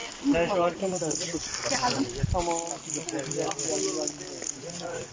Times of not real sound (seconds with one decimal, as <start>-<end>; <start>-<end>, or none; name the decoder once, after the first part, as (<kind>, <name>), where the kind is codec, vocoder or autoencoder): 0.5-1.4 (vocoder, Vocos); 4.5-5.1